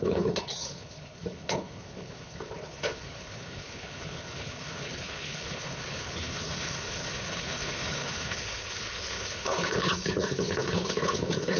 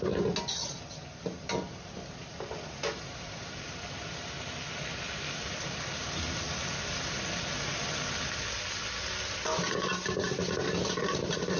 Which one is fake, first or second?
first